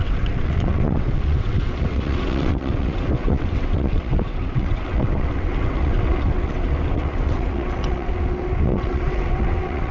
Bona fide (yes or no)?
no